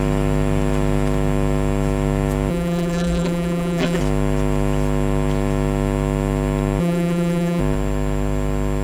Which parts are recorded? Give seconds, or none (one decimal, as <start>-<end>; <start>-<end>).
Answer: 0.0-2.5; 4.0-6.8; 7.6-8.8